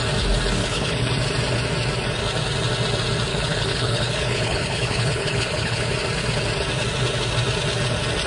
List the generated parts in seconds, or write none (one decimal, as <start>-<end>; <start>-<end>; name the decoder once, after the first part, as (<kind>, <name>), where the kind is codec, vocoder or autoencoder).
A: 0.6-1.2 (codec, HILCodec); 3.3-5.9